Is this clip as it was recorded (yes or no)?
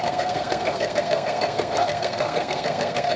no